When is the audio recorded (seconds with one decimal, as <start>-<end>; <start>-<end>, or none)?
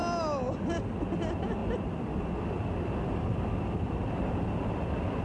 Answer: 0.0-5.2